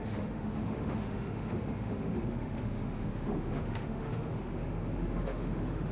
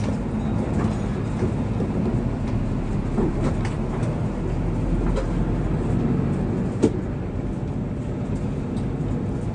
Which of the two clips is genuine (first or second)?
second